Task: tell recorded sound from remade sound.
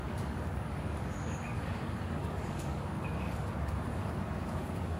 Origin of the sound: remade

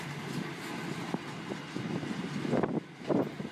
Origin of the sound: recorded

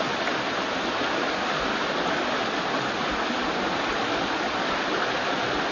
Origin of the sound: recorded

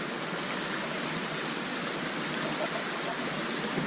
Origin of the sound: recorded